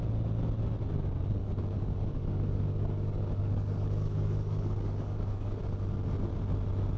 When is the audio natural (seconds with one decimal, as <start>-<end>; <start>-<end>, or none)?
0.0-1.4; 5.6-7.0